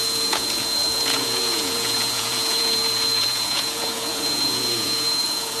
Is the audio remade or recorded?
remade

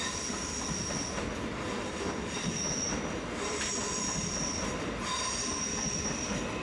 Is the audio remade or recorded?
recorded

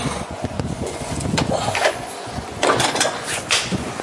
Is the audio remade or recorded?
remade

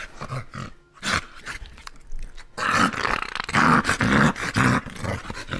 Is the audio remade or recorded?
recorded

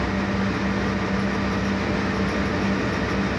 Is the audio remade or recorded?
recorded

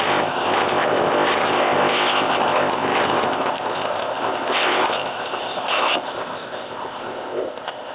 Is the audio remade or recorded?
remade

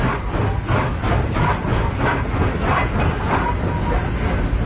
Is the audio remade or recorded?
recorded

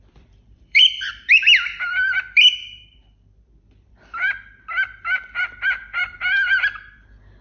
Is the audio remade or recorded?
remade